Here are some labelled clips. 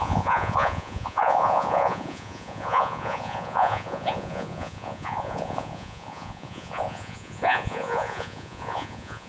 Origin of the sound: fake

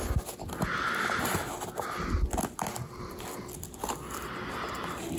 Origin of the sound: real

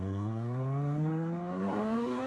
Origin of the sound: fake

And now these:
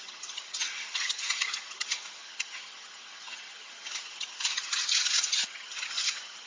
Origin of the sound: fake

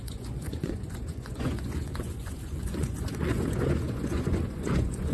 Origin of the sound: fake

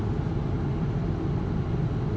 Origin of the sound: real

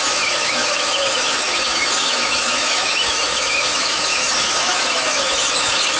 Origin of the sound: fake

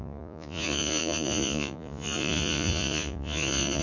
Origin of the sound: fake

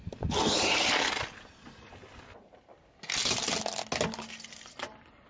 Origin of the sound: real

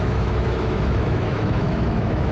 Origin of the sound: fake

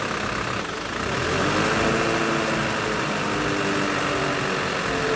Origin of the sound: real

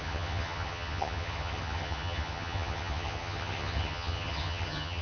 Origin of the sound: fake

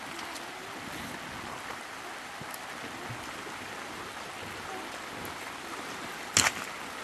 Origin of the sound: real